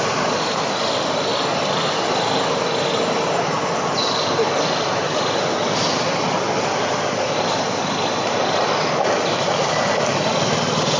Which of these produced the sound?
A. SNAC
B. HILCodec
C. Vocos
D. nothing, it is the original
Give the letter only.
D